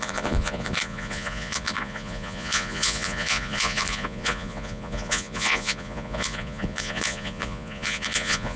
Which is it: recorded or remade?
remade